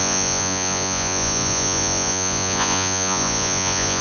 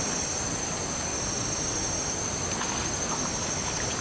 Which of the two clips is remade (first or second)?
first